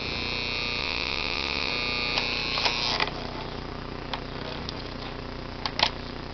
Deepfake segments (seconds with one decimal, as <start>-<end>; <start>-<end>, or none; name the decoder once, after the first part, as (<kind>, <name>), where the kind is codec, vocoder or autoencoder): 0.8-1.7 (vocoder, WaveNeXt)